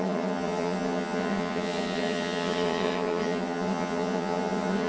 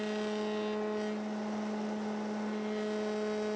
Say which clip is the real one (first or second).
second